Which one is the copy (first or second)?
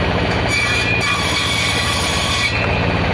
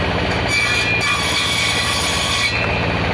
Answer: first